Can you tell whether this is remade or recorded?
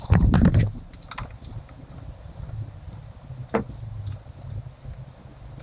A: recorded